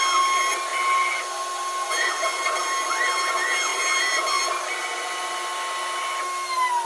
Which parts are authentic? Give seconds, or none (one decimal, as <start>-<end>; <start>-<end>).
0.0-6.8